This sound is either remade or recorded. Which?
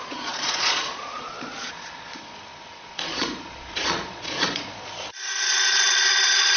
remade